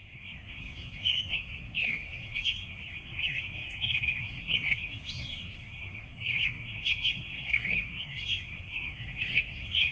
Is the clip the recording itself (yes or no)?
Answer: no